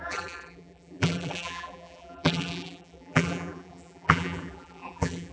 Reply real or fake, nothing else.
fake